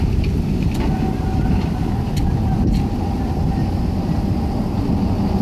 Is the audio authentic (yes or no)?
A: yes